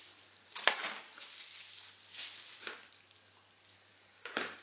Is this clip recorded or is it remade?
recorded